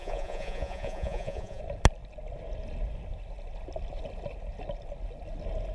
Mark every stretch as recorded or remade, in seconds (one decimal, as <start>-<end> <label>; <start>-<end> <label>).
0.0-1.6 remade; 1.6-5.7 recorded